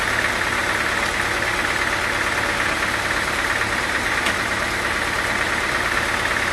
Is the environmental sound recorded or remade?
recorded